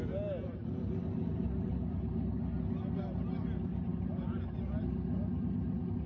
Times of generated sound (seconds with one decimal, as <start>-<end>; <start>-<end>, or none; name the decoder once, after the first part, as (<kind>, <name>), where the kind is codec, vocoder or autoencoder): 1.3-2.3 (vocoder, BigVGAN v2); 3.9-4.6